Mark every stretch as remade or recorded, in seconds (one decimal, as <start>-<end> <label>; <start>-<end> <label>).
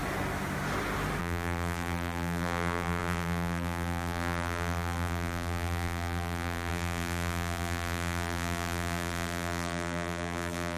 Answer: 0.0-1.2 recorded; 1.2-10.8 remade